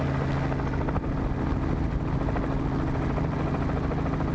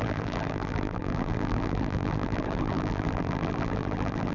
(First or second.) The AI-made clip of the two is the second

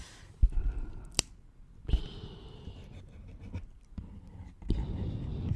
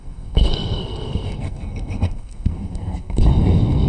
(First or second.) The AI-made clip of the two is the second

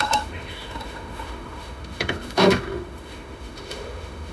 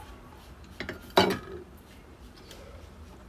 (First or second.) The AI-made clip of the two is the first